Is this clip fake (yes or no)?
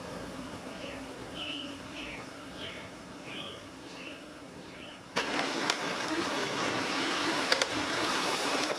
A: yes